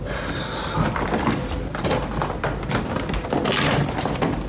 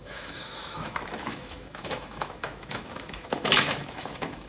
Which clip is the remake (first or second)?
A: second